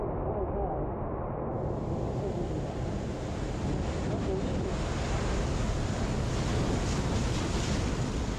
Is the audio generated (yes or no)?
no